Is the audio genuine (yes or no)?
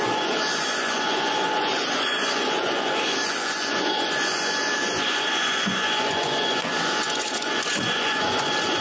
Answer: no